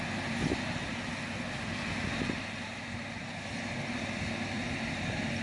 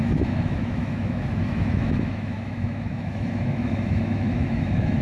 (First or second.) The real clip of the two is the first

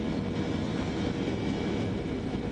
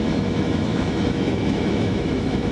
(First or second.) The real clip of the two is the first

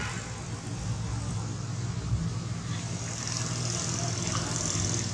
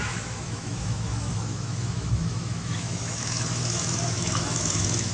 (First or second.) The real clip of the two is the first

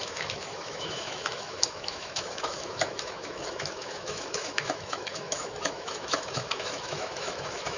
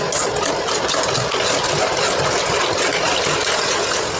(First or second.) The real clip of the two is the second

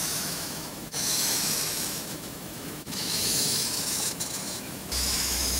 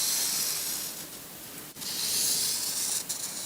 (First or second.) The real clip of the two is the second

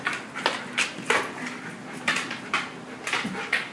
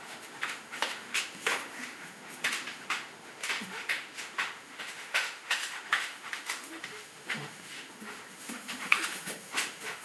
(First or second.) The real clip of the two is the first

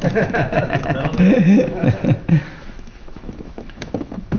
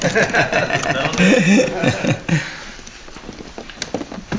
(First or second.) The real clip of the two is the second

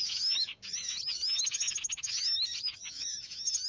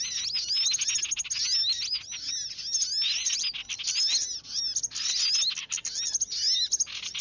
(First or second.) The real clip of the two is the second